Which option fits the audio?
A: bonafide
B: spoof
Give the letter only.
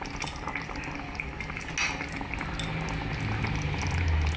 A